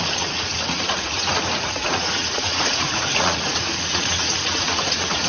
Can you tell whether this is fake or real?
fake